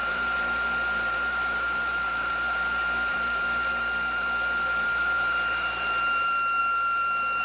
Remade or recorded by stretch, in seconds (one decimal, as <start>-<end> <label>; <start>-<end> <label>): 0.0-7.4 remade